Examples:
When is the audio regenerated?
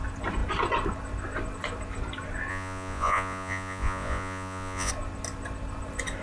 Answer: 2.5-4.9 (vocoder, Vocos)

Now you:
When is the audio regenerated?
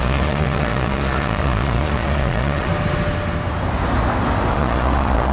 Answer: 0.0-2.7 (vocoder, Vocos); 4.5-5.3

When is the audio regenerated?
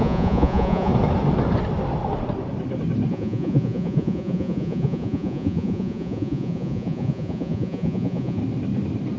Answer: 0.0-0.9 (vocoder, Vocos); 3.1-8.4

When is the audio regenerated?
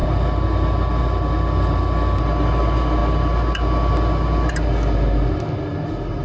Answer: none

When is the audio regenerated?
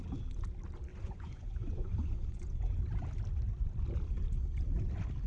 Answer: 0.9-2.8 (vocoder, Vocos)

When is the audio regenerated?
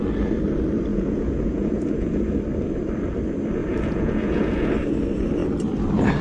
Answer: 0.9-2.3 (vocoder, Vocos); 3.6-4.7